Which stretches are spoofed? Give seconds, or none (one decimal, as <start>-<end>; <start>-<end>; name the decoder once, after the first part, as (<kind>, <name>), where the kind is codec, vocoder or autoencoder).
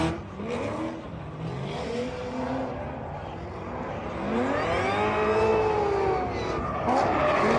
none